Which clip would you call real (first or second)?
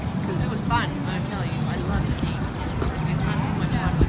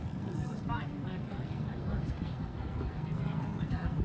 first